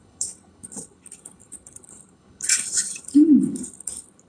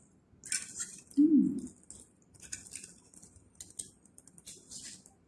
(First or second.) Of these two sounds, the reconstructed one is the first